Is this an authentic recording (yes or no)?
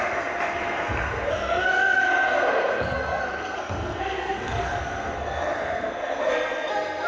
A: no